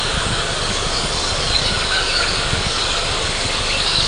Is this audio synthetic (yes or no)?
yes